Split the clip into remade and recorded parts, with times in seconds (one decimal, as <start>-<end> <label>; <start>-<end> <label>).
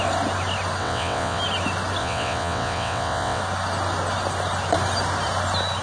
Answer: 0.0-0.8 recorded; 0.8-1.4 remade; 1.4-2.0 recorded; 2.0-3.4 remade; 3.4-5.8 recorded